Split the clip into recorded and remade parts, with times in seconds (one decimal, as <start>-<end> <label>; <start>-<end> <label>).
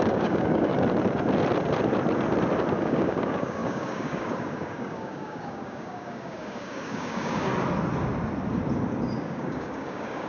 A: 0.0-0.7 remade; 0.7-2.8 recorded; 2.8-7.5 remade; 7.5-9.0 recorded; 9.0-10.3 remade